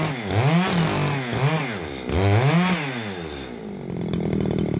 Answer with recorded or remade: recorded